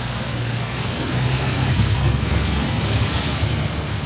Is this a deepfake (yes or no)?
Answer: yes